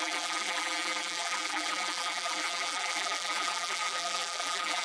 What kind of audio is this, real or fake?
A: fake